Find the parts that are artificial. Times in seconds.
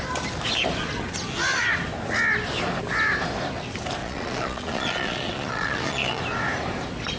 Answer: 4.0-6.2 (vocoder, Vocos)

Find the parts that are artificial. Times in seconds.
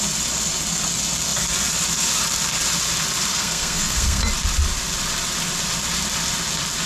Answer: 3.3-4.2 (codec, SNAC)